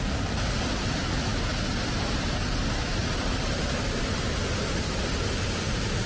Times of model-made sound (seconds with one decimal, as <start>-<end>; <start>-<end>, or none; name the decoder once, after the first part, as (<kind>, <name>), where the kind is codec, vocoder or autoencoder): 3.0-4.3 (vocoder, BigVGAN v2)